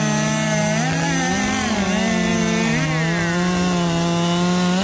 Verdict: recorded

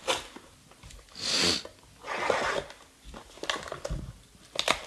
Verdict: recorded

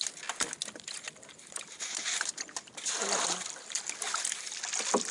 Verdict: recorded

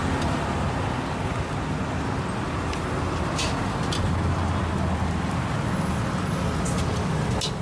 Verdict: recorded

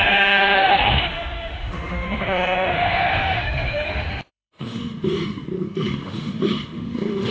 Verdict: remade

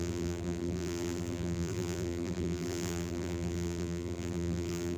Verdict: remade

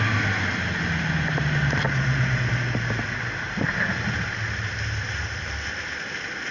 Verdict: recorded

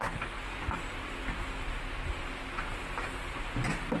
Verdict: recorded